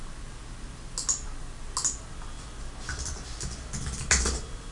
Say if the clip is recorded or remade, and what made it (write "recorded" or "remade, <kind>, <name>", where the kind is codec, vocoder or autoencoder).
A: recorded